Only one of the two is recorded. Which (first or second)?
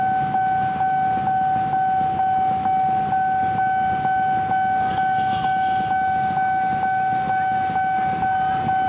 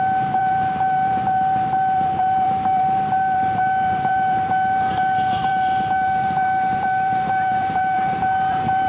first